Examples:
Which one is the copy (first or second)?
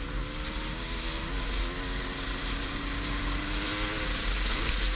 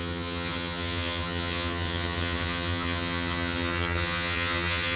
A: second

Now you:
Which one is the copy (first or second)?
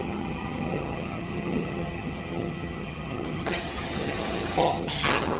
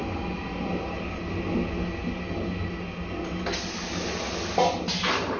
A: first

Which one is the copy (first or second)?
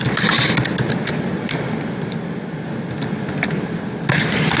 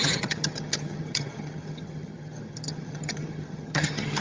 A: second